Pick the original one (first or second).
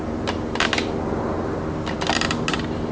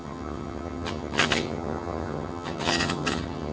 first